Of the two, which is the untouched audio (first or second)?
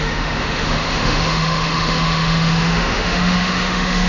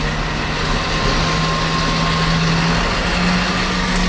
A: second